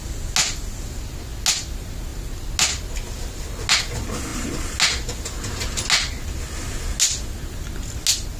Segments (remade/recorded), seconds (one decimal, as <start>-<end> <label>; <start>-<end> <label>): 0.0-8.4 recorded